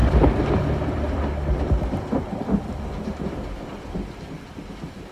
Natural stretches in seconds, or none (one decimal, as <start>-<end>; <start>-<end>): 2.7-5.1